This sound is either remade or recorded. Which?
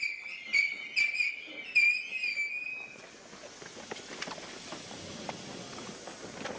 recorded